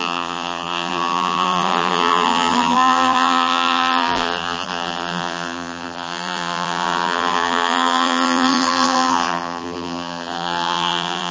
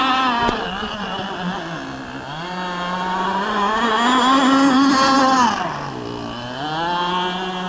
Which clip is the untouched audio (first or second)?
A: second